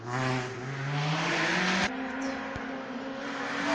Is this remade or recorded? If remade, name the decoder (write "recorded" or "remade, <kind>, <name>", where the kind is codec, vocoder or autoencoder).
recorded